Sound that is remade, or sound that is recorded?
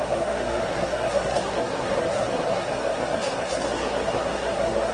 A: remade